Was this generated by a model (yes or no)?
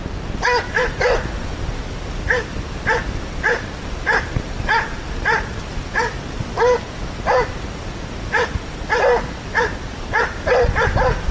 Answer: no